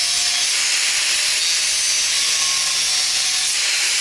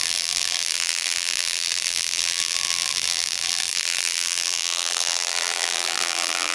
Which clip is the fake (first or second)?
second